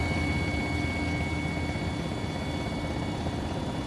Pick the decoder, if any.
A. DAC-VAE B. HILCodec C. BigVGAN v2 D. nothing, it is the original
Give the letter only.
D